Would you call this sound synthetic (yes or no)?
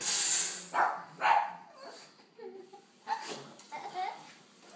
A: no